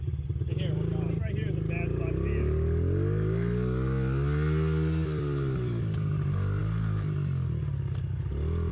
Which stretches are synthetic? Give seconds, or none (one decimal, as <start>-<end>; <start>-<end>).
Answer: none